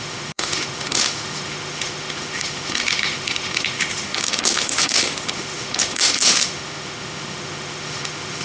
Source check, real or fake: fake